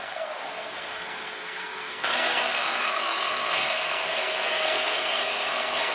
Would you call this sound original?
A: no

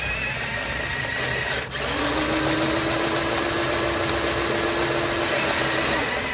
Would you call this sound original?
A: yes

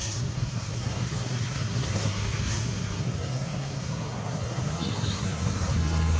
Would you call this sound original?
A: no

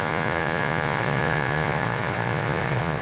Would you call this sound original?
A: no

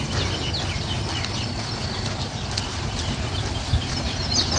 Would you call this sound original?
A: yes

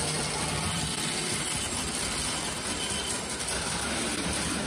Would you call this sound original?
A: yes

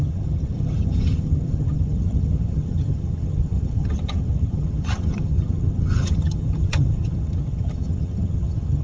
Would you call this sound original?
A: no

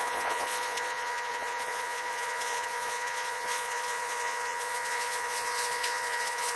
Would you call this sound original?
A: no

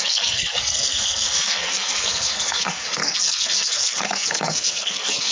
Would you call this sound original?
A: no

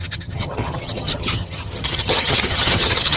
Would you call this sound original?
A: no